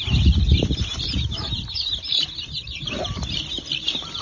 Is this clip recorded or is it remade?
remade